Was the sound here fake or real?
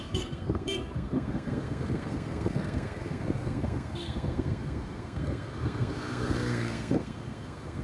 fake